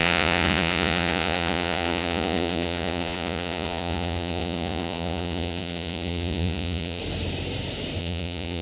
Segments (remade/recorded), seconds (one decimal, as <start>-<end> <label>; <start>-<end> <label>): 0.0-7.0 remade; 7.0-8.0 recorded; 8.0-8.6 remade